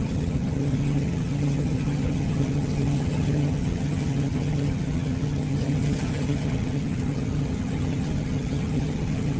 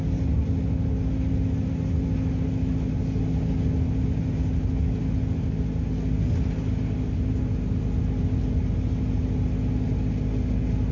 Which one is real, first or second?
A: second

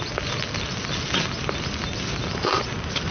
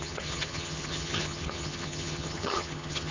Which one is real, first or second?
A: first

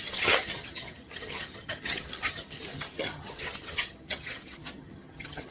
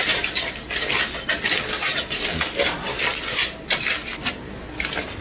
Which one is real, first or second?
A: second